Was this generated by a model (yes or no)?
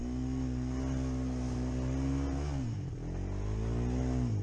no